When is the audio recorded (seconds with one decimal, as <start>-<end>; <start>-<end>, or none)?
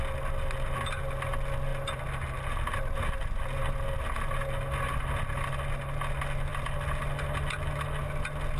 0.0-8.6